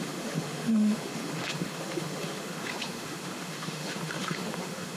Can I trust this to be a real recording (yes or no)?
no